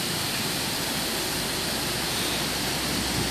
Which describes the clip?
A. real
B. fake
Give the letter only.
B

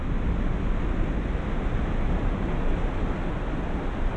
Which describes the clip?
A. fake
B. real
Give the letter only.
B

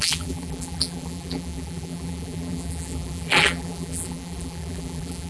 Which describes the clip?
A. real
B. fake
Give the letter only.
B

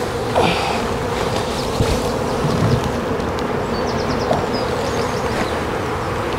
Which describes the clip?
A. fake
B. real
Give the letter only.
B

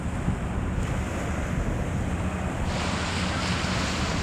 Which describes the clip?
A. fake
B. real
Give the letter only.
B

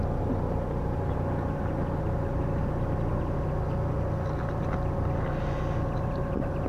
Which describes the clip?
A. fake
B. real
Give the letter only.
B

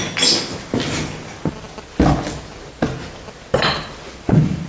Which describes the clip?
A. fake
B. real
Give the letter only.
B